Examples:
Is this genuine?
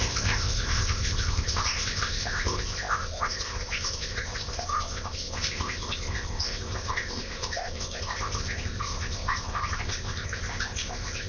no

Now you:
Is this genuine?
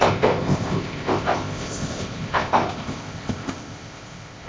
no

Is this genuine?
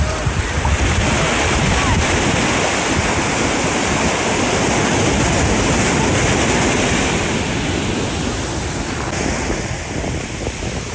yes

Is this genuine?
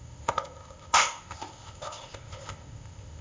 no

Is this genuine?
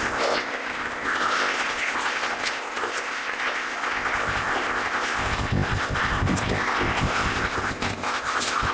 no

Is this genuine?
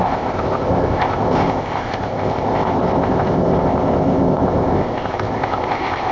no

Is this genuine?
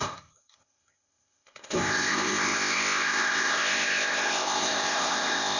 no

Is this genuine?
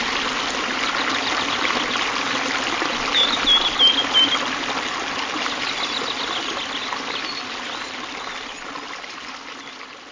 yes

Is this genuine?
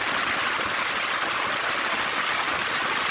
yes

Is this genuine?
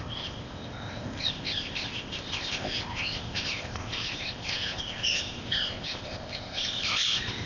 no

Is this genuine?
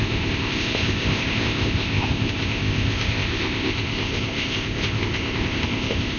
no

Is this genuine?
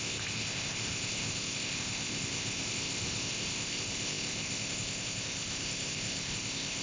no